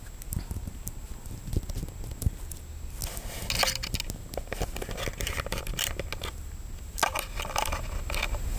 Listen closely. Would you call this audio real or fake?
real